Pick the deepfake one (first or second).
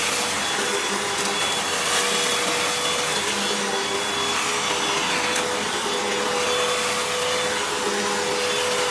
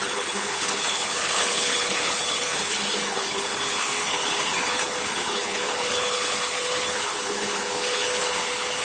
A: second